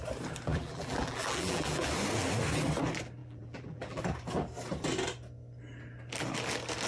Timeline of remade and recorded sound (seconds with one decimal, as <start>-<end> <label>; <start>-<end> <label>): 0.0-0.5 recorded; 0.5-1.9 remade; 1.9-3.2 recorded; 3.2-4.0 remade; 4.0-6.9 recorded